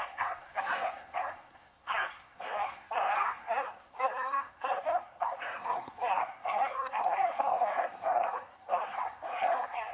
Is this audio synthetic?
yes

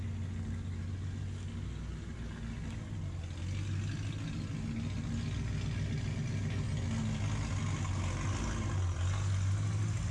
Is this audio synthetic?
no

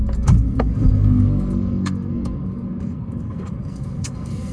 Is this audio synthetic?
yes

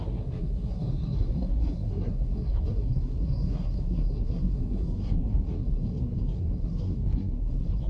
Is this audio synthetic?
yes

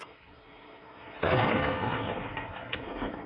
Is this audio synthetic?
yes